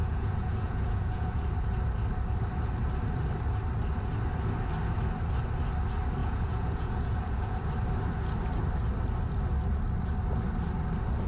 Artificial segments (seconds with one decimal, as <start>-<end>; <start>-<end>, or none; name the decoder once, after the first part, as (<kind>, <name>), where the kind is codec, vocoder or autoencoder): 0.0-1.4 (vocoder, Vocos); 6.2-7.7